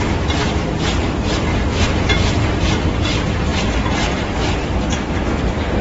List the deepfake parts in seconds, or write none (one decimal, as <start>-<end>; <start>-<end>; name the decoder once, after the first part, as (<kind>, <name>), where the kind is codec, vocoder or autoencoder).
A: 1.5-2.7 (vocoder, BigVGAN v2)